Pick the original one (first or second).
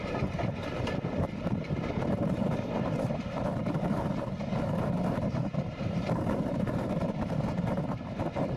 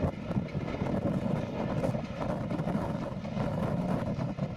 second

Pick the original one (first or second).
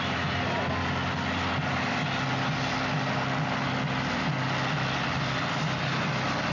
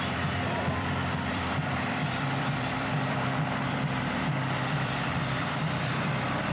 first